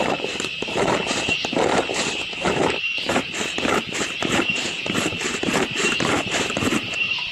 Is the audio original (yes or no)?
no